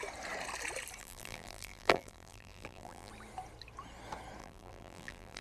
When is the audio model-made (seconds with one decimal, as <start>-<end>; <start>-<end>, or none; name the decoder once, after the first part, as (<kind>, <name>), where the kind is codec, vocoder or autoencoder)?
1.0-3.1 (vocoder, BigVGAN v2); 4.4-5.4